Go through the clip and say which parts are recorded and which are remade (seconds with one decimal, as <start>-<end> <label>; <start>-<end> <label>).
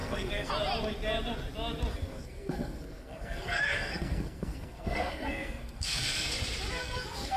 0.0-0.5 remade; 0.5-1.9 recorded; 1.9-6.3 remade; 6.3-6.8 recorded; 6.8-7.4 remade